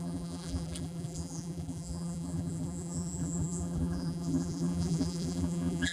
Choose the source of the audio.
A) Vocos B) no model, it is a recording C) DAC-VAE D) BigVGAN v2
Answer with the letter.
D